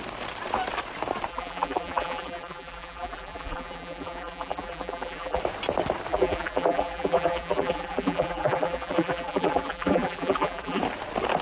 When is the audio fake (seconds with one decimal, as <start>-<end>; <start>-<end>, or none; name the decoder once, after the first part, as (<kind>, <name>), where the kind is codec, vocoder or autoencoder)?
1.3-5.4 (vocoder, BigVGAN v2); 6.1-10.8

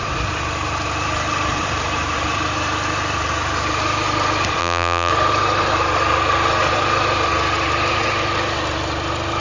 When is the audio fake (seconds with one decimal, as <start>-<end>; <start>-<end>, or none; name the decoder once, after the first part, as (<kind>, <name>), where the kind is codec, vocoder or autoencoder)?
4.6-5.1 (vocoder, BigVGAN v2)